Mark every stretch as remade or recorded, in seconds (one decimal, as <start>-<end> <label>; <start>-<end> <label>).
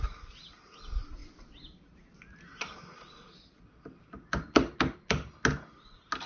0.0-6.3 recorded